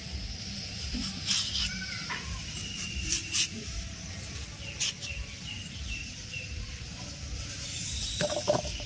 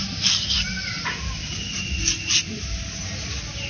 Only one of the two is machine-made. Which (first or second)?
first